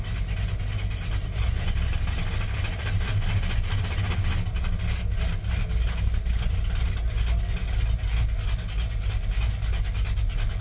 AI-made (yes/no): no